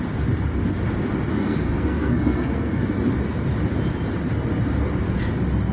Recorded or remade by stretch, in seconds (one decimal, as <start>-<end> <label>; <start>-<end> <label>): 0.0-1.3 recorded; 1.3-2.8 remade; 2.8-5.7 recorded